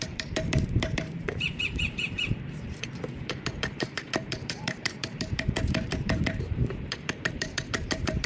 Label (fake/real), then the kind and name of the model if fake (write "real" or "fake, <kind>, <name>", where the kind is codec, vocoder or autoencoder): fake, vocoder, BigVGAN v2